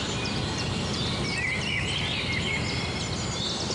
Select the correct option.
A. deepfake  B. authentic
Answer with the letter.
B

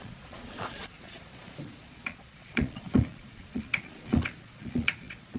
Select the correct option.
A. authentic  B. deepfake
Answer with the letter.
B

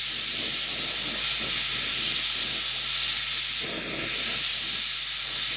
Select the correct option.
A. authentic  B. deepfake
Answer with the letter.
A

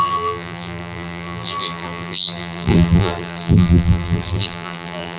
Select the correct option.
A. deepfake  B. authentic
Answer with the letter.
A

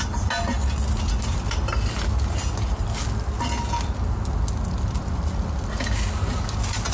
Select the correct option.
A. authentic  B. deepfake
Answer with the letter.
A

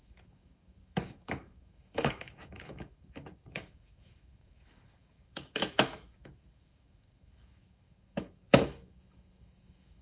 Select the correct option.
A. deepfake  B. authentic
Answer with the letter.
A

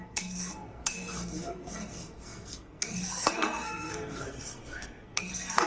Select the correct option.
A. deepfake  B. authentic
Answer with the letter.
A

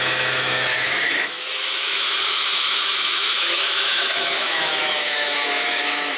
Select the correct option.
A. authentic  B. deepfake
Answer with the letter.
B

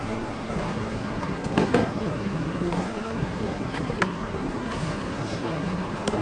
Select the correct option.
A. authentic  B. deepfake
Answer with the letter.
B